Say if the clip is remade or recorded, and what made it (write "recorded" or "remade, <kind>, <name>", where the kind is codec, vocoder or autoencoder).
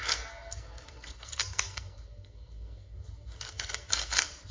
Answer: remade, codec, SNAC